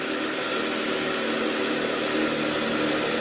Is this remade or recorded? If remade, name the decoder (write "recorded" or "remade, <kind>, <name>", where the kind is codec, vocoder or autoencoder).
recorded